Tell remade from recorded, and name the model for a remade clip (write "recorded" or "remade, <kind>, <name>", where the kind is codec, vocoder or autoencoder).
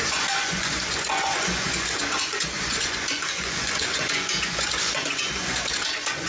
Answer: remade, vocoder, Vocos